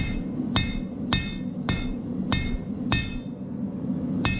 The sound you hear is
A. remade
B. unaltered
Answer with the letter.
B